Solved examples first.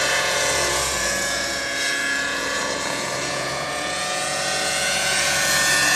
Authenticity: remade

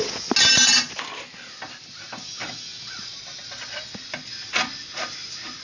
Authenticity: recorded